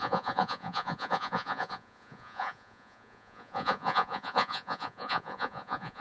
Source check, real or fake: fake